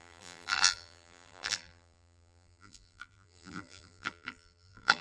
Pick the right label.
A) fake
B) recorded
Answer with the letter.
A